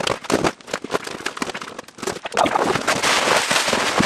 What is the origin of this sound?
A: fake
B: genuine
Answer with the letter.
B